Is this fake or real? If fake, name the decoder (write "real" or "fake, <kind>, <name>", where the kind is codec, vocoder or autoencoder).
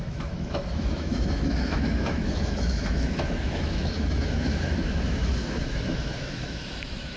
fake, autoencoder, DAC-VAE